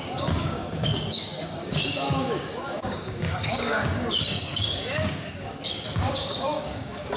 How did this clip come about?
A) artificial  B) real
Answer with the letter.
A